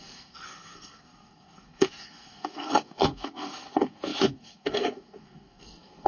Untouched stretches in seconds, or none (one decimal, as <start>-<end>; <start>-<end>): none